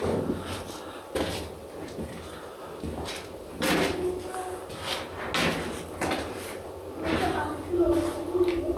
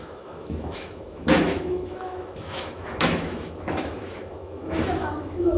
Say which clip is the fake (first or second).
second